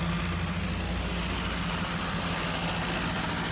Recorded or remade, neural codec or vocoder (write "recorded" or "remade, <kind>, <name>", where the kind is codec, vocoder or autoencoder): recorded